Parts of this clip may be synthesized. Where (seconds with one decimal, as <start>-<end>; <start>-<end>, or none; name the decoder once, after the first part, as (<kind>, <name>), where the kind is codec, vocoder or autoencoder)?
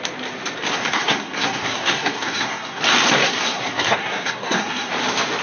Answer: 0.7-2.8 (codec, SNAC); 3.2-4.9